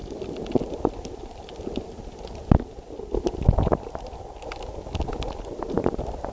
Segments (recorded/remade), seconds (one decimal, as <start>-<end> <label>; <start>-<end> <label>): 0.0-6.3 recorded